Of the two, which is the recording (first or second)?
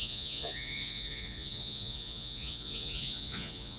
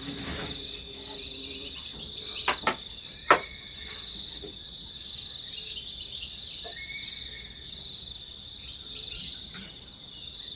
second